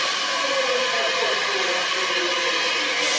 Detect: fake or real real